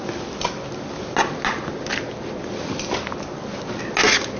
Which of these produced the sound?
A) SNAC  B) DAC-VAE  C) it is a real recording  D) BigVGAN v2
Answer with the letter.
C